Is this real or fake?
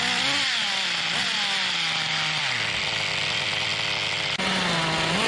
real